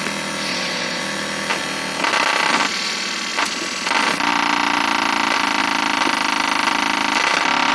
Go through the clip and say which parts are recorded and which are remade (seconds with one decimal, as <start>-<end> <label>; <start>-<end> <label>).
0.0-0.5 recorded; 0.5-1.0 remade; 1.0-7.7 recorded